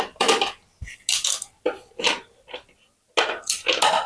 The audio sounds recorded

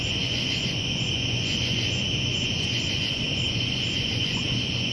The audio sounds remade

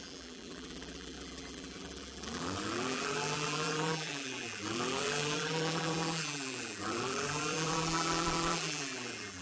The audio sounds remade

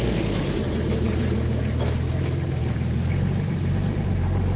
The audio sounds remade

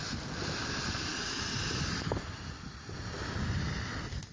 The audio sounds recorded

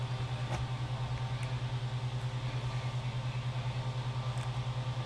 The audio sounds recorded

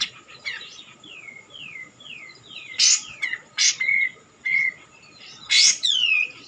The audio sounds remade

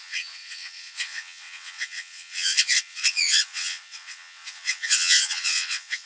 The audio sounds remade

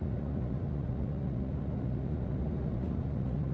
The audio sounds remade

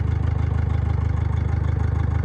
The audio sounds recorded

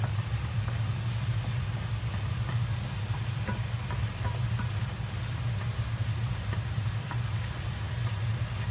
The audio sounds recorded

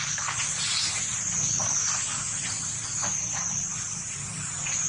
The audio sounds recorded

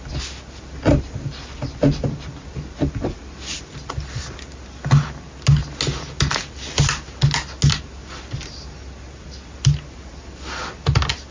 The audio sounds recorded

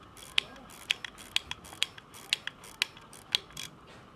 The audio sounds recorded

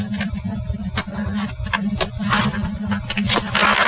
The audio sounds recorded